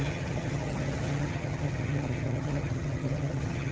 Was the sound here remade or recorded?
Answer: remade